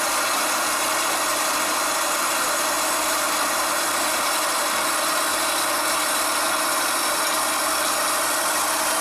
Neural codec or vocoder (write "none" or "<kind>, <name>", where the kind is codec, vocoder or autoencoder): none